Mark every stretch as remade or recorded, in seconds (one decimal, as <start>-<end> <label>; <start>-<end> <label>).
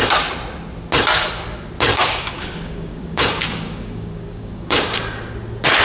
0.0-1.9 recorded; 1.9-5.0 remade; 5.0-5.8 recorded